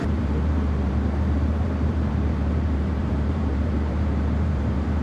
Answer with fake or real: fake